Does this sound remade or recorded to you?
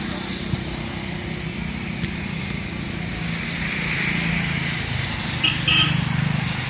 recorded